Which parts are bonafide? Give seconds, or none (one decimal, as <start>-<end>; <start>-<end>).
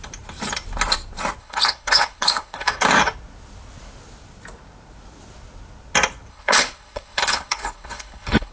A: 0.0-1.4; 2.7-6.3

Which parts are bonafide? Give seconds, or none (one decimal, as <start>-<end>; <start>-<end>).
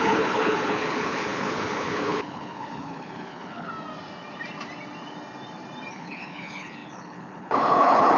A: 3.7-5.9